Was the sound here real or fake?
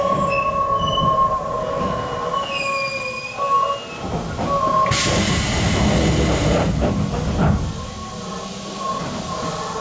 real